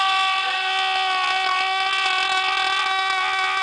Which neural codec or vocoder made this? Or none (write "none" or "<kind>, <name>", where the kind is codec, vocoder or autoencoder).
none